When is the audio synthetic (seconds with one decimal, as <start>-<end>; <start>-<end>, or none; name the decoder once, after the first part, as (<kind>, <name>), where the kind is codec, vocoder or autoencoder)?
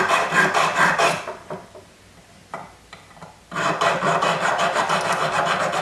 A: none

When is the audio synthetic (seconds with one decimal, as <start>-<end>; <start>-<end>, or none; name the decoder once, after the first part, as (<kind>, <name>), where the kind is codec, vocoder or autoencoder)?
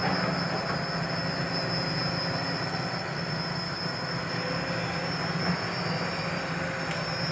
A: none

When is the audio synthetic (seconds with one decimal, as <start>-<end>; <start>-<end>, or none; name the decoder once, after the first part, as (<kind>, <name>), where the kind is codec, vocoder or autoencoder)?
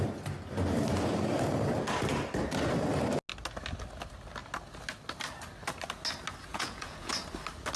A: 6.5-7.1 (vocoder, Vocos)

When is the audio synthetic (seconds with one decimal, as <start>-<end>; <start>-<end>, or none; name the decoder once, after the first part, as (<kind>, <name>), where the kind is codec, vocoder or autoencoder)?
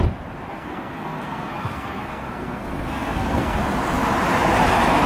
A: 0.5-3.6 (codec, SNAC)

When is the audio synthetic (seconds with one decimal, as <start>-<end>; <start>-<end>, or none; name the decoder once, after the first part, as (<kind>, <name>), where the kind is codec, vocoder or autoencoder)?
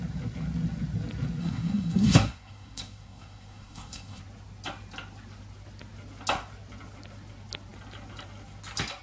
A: 1.4-4.2 (codec, SNAC)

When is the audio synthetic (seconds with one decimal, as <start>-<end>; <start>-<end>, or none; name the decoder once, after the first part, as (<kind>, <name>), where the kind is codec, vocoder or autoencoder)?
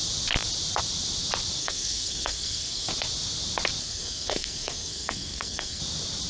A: 1.6-2.9 (codec, SNAC); 3.8-5.8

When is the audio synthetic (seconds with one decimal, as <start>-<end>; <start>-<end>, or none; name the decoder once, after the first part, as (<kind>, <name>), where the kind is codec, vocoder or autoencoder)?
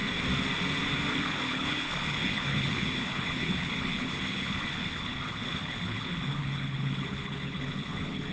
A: 1.1-8.3 (codec, HILCodec)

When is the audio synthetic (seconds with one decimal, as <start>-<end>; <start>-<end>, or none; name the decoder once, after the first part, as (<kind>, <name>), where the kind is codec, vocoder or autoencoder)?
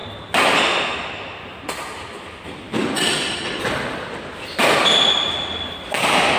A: none